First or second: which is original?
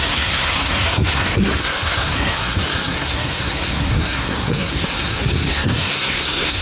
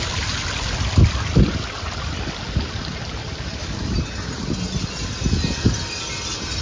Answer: second